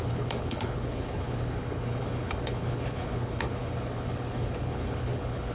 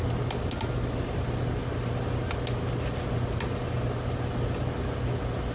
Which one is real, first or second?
second